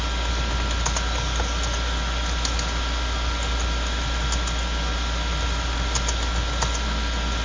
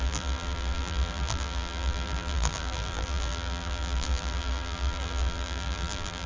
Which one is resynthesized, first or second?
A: second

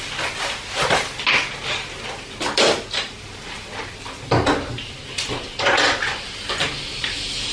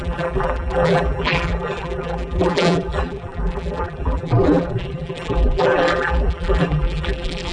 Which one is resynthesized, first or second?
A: second